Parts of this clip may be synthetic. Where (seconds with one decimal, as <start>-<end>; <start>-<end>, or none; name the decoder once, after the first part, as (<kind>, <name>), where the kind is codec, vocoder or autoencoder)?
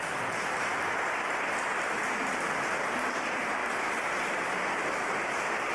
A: none